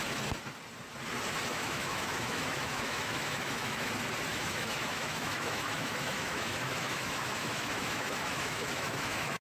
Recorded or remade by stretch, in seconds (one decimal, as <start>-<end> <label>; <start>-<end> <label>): 0.0-1.5 recorded; 1.5-3.9 remade; 3.9-4.3 recorded; 4.3-9.4 remade